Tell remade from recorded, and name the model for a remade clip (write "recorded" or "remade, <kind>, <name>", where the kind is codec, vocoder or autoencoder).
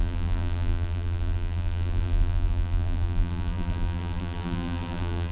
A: remade, vocoder, BigVGAN v2